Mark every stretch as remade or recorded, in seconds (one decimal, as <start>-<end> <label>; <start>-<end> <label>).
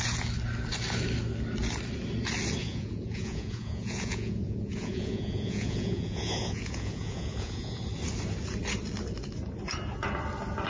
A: 0.0-2.6 recorded; 2.6-7.8 remade; 7.8-10.7 recorded